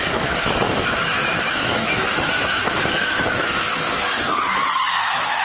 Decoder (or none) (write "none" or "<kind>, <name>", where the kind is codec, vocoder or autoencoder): autoencoder, DAC-VAE